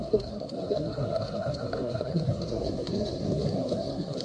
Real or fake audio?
fake